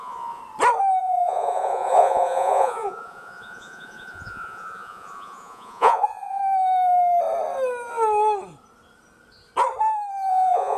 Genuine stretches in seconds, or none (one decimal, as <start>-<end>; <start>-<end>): 0.4-1.0; 6.4-10.3

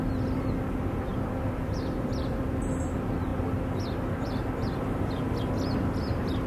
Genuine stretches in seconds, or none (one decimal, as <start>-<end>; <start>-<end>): 0.0-1.1; 2.6-6.5

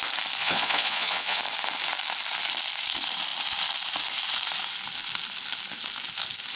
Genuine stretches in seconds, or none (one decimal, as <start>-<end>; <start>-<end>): 0.0-0.4; 1.4-6.6

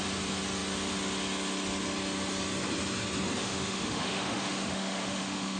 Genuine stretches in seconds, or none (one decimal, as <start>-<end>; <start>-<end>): 0.0-3.4

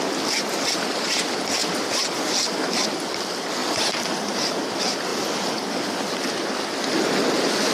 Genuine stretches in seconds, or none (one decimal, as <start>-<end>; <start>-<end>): 0.0-7.7